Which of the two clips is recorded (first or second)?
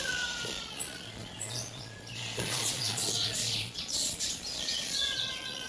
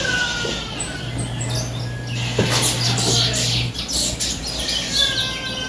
second